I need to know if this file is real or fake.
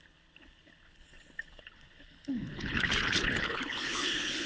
fake